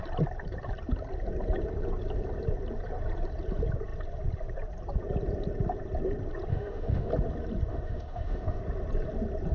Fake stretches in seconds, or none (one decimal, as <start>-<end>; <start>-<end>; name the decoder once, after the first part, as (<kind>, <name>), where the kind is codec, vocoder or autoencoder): 6.5-7.1 (autoencoder, DAC-VAE); 7.7-8.6